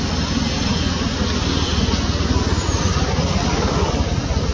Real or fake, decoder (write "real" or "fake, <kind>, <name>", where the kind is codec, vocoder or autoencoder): real